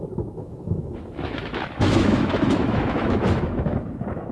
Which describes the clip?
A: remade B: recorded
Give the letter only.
A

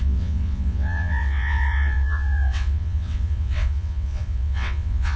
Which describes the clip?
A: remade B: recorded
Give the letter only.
A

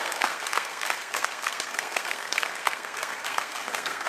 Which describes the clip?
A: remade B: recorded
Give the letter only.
A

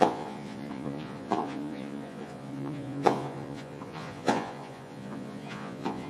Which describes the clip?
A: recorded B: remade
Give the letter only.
B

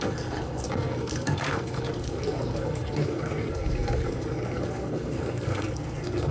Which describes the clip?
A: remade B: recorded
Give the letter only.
A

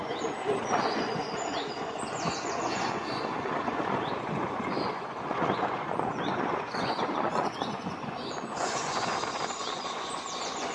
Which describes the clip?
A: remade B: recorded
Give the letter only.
A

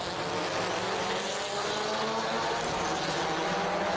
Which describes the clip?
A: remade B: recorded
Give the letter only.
B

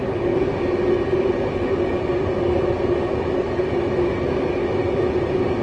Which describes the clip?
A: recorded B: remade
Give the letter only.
A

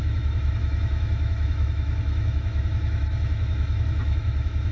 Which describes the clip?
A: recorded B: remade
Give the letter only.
B